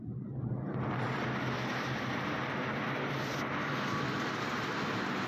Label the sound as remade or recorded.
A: recorded